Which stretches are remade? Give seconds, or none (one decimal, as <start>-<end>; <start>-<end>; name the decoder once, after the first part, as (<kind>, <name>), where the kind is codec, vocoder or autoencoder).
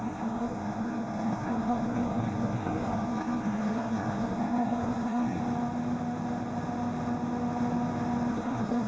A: 0.0-5.4 (codec, SNAC); 8.3-8.9